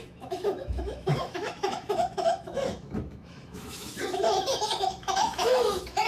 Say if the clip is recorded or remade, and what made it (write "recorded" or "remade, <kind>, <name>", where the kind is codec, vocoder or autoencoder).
remade, autoencoder, DAC-VAE